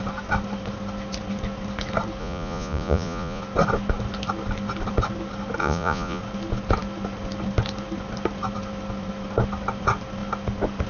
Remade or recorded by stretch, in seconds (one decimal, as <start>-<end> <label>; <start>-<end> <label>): 0.0-2.2 recorded; 2.2-3.4 remade; 3.4-5.6 recorded; 5.6-6.2 remade; 6.2-10.9 recorded